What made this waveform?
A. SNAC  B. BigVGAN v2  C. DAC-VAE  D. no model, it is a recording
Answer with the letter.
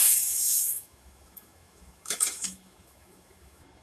C